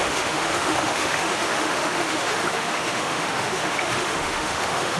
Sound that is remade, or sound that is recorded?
remade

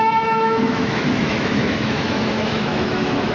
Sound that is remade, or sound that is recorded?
remade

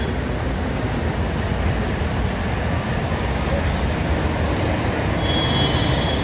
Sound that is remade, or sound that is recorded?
recorded